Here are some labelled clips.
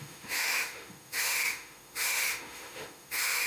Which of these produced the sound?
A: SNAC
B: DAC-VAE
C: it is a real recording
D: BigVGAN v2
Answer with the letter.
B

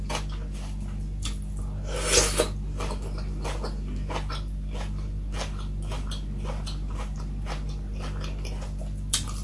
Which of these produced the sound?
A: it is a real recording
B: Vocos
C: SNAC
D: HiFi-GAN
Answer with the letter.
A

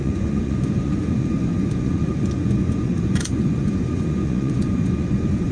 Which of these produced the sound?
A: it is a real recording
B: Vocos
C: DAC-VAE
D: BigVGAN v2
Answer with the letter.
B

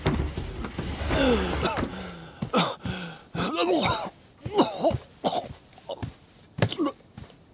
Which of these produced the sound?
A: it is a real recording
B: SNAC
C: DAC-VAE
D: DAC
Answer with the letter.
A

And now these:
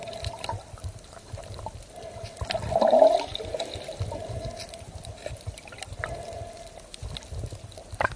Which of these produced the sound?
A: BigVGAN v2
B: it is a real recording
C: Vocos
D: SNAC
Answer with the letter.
A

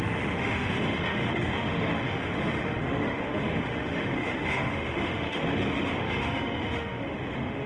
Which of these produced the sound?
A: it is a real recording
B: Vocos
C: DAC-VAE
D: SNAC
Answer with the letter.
C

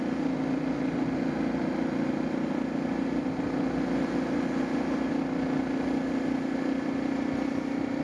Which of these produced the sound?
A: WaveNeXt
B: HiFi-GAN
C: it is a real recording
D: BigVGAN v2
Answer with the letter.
C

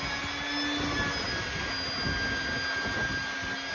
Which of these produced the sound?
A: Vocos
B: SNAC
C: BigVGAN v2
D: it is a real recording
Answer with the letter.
D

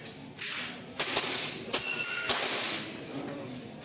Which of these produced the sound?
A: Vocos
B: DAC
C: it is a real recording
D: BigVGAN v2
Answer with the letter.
C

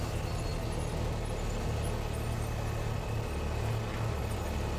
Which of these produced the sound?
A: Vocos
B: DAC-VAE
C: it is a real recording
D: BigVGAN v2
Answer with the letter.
C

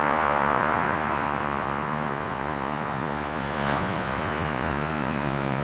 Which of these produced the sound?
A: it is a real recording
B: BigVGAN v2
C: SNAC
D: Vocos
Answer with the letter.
D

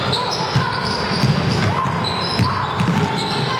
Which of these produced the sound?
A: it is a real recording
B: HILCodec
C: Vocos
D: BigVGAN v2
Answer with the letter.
A